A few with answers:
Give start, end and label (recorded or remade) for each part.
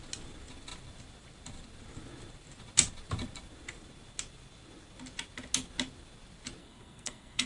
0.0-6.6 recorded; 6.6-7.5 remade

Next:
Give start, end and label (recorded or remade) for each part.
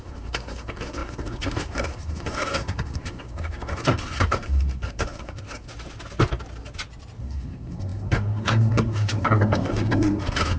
0.0-5.7 remade; 5.7-7.2 recorded; 7.2-10.6 remade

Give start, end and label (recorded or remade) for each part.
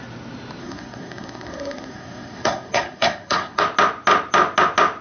0.0-0.6 recorded; 0.6-3.6 remade; 3.6-5.0 recorded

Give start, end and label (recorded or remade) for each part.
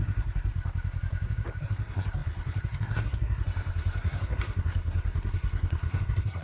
0.0-0.5 remade; 0.5-1.6 recorded; 1.6-6.4 remade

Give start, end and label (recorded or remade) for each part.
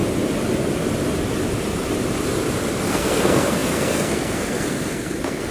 0.0-2.9 recorded; 2.9-5.5 remade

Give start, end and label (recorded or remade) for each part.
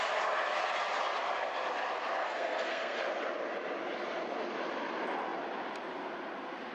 0.0-2.2 recorded; 2.2-3.0 remade; 3.0-6.7 recorded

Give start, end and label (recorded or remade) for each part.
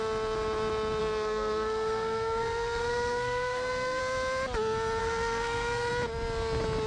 0.0-1.0 recorded; 1.0-4.0 remade; 4.0-5.0 recorded; 5.0-5.9 remade; 5.9-6.9 recorded